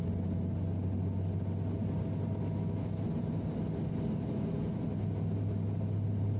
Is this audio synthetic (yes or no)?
no